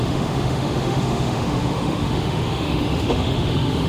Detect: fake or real fake